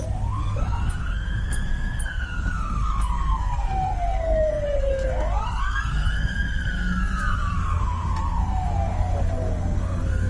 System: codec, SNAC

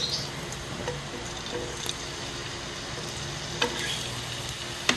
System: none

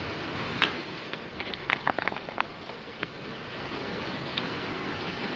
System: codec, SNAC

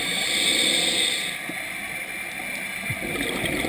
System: none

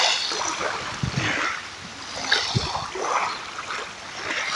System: none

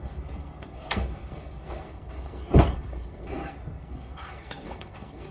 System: codec, SNAC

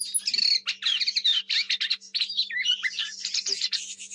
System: none